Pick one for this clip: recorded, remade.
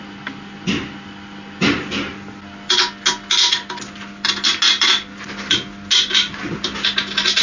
recorded